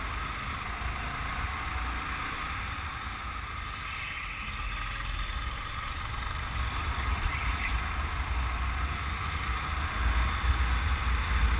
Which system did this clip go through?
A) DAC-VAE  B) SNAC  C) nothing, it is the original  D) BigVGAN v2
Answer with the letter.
C